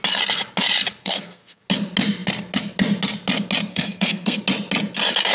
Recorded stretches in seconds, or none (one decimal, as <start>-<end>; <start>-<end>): 0.0-1.0; 1.6-3.7; 4.4-5.3